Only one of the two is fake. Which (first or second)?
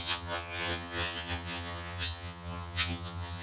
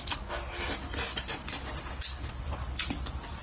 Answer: first